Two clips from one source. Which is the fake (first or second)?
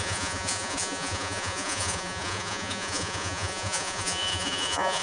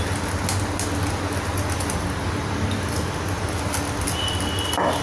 first